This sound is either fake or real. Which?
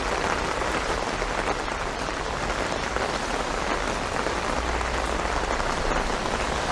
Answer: real